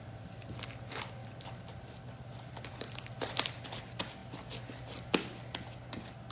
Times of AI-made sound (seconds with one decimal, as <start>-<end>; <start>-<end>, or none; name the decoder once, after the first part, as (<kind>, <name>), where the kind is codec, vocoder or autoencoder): none

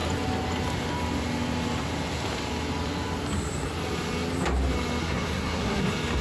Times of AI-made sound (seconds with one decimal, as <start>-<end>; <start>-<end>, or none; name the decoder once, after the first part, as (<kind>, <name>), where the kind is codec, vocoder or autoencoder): 5.0-5.8 (codec, SNAC)

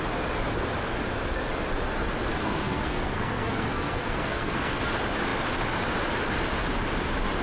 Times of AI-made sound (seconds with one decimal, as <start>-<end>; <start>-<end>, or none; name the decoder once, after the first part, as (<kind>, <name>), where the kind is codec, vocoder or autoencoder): 2.3-4.8 (codec, SNAC)

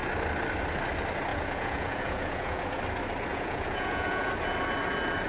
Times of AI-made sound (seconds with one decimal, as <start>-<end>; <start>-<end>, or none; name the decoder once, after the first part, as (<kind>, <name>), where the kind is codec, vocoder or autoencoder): 1.3-2.8 (vocoder, Vocos); 3.3-4.3